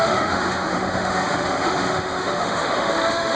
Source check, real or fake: fake